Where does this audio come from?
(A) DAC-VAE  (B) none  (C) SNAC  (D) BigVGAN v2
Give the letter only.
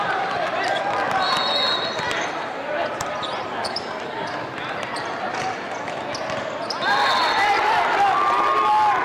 B